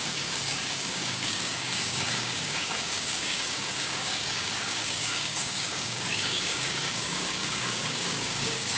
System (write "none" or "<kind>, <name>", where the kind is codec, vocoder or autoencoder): codec, DAC